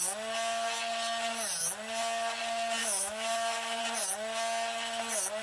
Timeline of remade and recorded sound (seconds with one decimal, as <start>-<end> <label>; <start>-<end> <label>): 0.0-2.8 recorded; 2.8-3.8 remade; 3.8-5.4 recorded